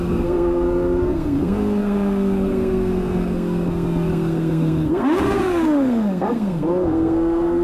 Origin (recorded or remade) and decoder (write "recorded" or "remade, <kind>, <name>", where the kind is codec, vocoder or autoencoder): remade, codec, SNAC